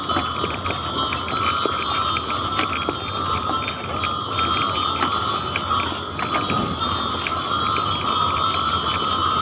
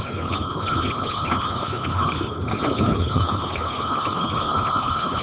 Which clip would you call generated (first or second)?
second